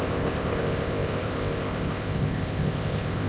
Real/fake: fake